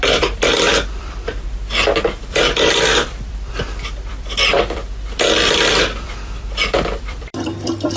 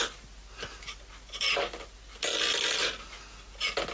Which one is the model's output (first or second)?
first